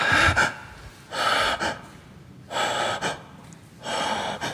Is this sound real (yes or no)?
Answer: yes